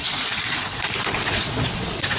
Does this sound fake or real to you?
fake